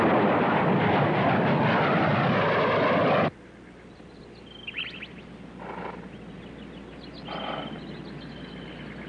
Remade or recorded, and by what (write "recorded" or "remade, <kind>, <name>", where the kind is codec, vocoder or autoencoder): recorded